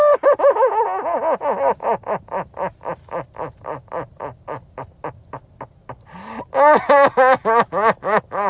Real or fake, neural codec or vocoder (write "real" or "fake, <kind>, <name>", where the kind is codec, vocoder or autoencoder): real